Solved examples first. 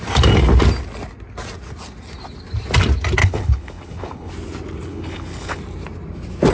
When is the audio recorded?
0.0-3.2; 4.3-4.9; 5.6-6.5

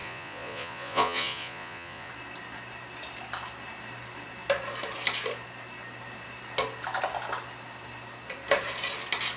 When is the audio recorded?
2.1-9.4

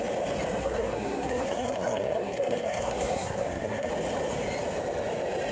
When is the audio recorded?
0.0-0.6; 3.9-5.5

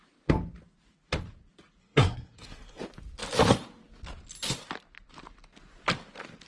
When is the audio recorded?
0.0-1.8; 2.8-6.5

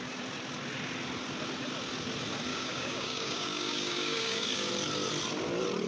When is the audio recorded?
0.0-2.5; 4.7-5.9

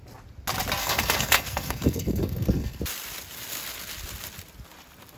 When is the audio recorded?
0.0-0.8; 2.8-5.2

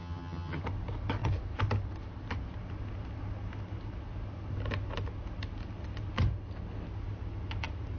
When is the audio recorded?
0.6-8.0

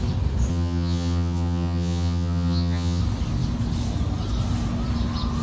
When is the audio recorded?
0.0-0.5; 3.0-5.4